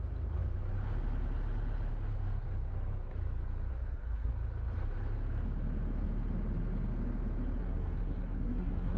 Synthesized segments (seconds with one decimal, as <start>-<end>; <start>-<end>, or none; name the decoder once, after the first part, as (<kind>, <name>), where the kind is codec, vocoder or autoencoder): 3.7-4.3 (codec, SNAC); 7.6-9.0